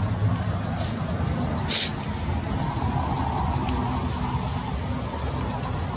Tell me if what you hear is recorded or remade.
recorded